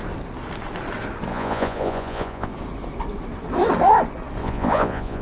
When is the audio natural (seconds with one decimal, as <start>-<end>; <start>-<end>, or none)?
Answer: 0.0-1.3; 2.5-4.4